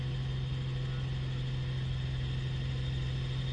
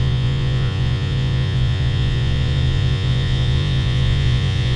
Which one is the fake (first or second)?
second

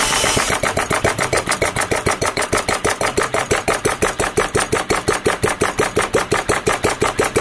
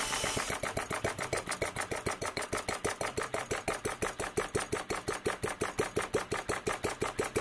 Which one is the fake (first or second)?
first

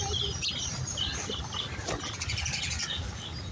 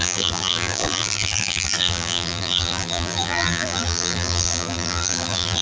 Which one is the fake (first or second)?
second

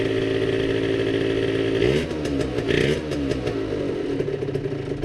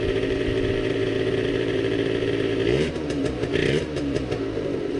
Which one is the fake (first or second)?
second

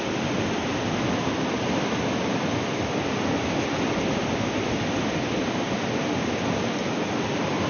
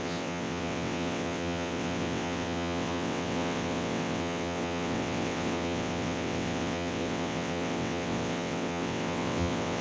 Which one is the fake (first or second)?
second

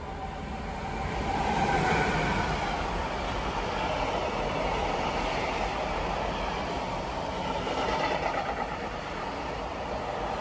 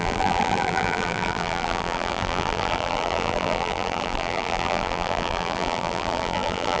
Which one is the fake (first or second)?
second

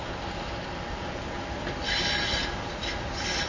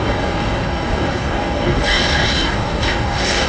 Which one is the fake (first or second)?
second